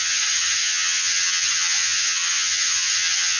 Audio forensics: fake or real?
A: fake